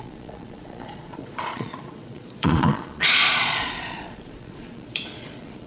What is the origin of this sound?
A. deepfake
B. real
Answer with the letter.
A